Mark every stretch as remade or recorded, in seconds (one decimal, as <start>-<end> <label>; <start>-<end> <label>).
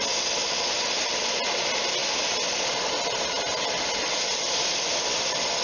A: 0.0-5.6 recorded